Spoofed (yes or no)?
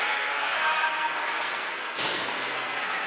yes